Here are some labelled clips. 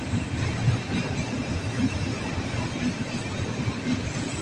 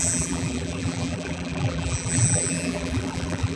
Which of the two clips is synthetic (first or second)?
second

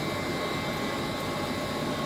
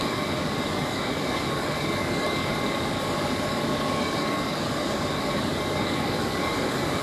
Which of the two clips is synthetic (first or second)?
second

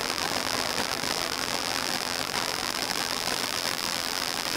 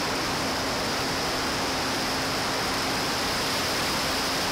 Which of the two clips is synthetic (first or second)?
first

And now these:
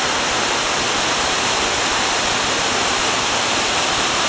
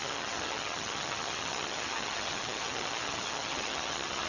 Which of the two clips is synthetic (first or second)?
second